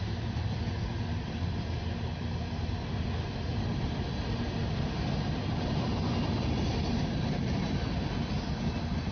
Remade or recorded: recorded